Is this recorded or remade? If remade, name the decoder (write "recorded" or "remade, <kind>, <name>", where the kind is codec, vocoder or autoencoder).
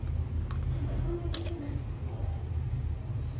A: recorded